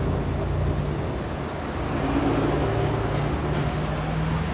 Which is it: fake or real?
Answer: real